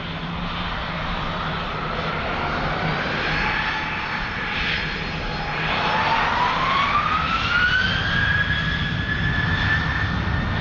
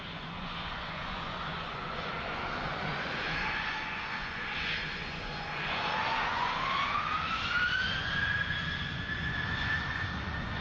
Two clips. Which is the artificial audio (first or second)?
second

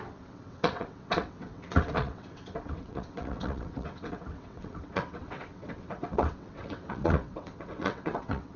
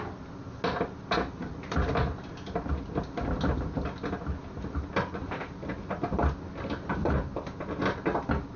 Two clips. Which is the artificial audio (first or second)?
first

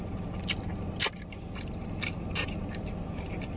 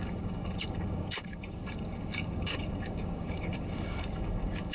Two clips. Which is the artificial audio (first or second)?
second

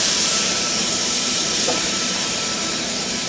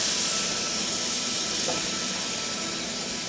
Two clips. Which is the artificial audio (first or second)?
first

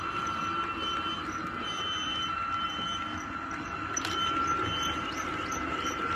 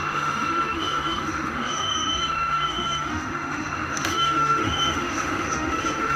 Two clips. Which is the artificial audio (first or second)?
second